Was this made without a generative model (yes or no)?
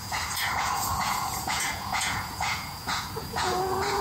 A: no